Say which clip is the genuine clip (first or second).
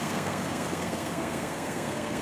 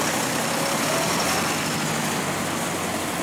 second